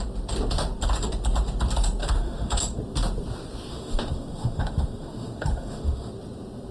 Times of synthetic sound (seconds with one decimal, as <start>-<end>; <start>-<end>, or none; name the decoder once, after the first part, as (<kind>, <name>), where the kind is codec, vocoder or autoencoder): 2.0-2.6 (autoencoder, DAC-VAE); 3.7-6.1